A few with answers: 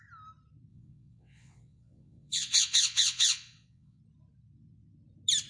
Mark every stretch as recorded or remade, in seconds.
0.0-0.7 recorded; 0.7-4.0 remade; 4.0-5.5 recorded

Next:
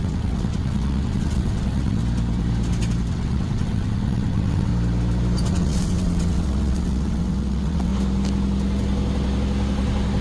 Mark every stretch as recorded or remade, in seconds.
0.0-2.0 remade; 2.0-3.1 recorded; 3.1-4.7 remade; 4.7-5.5 recorded; 5.5-7.9 remade; 7.9-10.2 recorded

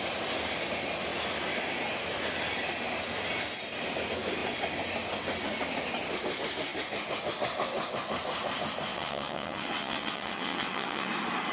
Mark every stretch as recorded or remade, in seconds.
0.0-8.9 recorded; 8.9-11.1 remade; 11.1-11.5 recorded

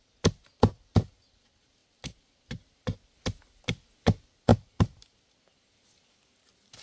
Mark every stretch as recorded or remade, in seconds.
0.0-6.8 recorded

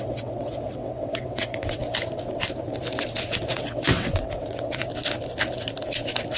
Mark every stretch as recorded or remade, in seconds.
0.0-1.8 remade; 1.8-3.5 recorded; 3.5-4.9 remade; 4.9-6.4 recorded

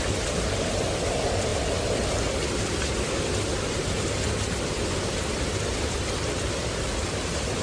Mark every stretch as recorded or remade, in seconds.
0.0-7.6 recorded

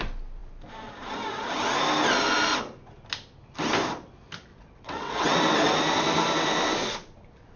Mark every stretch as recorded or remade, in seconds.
0.0-4.5 recorded; 4.5-5.4 remade; 5.4-7.6 recorded

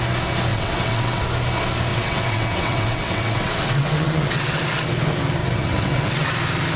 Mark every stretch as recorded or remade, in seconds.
0.0-0.5 recorded; 0.5-1.2 remade; 1.2-1.9 recorded; 1.9-4.6 remade; 4.6-5.4 recorded; 5.4-6.3 remade; 6.3-6.8 recorded